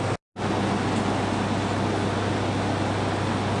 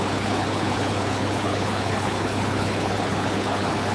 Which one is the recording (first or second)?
first